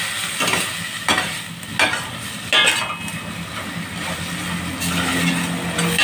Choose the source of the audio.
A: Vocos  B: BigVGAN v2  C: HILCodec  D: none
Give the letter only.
D